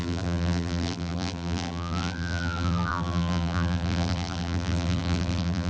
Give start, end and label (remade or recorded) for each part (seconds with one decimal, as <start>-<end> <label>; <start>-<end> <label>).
0.0-5.7 remade

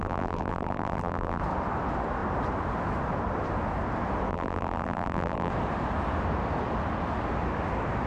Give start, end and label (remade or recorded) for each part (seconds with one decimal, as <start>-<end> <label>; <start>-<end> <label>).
0.0-1.4 remade; 1.4-4.3 recorded; 4.3-5.5 remade; 5.5-8.1 recorded